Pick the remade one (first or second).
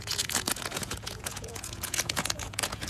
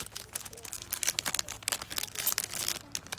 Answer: first